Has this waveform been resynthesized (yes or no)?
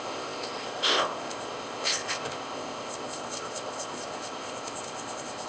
yes